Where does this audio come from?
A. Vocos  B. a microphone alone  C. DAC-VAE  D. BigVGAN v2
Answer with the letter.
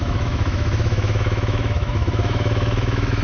C